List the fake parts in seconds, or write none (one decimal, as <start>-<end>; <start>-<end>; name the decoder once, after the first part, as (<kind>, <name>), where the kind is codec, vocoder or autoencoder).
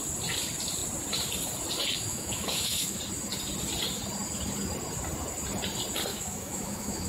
2.1-3.0 (autoencoder, DAC-VAE); 6.1-7.1